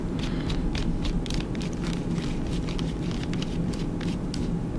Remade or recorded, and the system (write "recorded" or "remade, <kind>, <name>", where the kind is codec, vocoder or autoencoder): remade, vocoder, BigVGAN v2